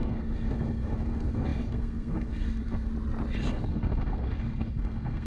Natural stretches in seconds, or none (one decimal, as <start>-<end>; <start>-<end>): 2.9-3.5